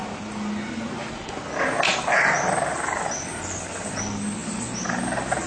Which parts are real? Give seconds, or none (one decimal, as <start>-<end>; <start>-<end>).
0.0-5.5